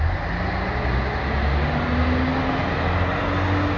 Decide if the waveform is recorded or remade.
recorded